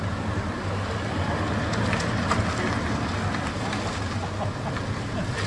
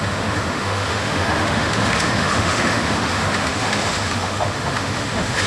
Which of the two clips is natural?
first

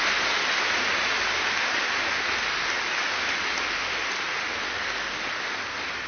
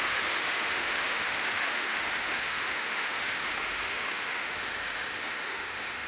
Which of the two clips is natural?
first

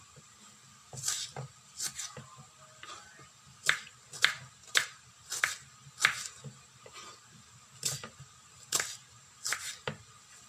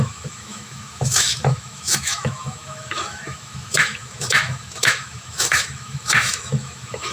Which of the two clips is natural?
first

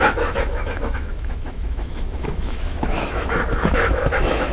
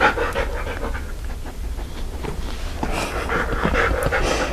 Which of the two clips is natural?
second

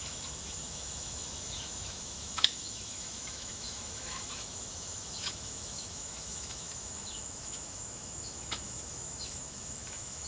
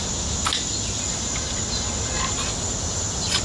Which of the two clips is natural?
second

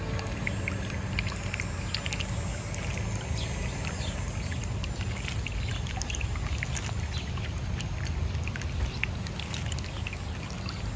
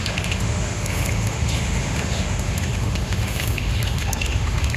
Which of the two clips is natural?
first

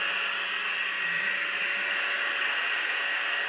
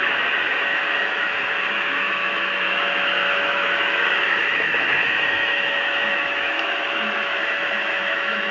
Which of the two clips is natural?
first